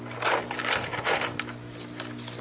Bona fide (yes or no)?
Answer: yes